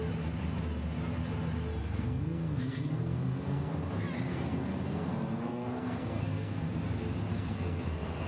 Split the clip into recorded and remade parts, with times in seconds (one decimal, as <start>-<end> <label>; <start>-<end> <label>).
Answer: 0.0-1.8 recorded; 1.8-3.7 remade; 3.7-4.3 recorded; 4.3-6.7 remade; 6.7-7.3 recorded; 7.3-8.3 remade